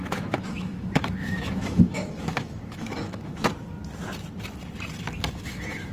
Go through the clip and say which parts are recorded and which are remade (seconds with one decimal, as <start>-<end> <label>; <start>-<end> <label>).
0.0-3.5 remade; 3.5-5.3 recorded; 5.3-5.9 remade